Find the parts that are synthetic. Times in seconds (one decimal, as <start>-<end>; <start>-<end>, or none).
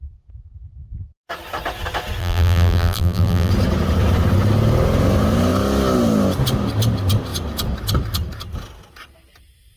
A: 2.2-3.5